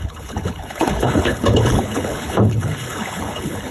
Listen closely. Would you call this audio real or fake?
fake